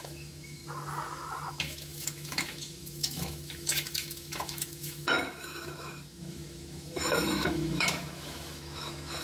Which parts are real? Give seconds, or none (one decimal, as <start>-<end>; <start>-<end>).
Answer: 0.6-1.5

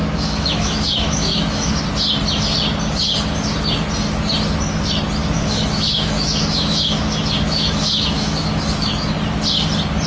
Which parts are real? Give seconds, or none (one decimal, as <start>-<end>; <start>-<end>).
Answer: 1.7-5.2; 9.1-10.1

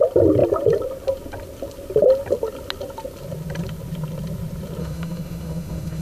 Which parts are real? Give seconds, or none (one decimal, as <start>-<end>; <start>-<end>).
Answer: 0.0-4.8

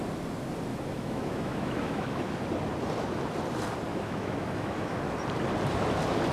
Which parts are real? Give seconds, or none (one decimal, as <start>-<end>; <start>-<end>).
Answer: 0.0-0.7; 2.3-3.9; 5.0-6.3

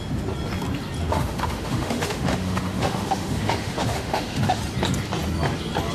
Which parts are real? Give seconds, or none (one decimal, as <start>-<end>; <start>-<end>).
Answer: 0.0-1.1; 4.6-5.9